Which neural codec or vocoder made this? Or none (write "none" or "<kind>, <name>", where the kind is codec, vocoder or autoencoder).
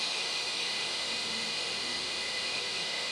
autoencoder, DAC-VAE